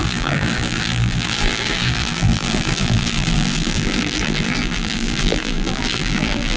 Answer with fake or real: fake